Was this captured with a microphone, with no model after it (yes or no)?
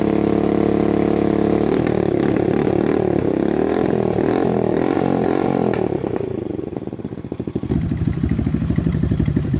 no